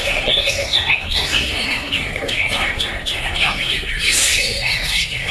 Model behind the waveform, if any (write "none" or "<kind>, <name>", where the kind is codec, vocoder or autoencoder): codec, SNAC